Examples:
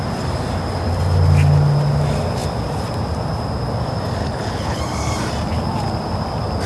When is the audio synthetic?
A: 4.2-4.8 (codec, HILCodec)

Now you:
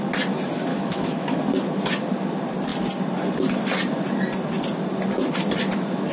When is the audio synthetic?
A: 0.7-1.4 (autoencoder, DAC-VAE)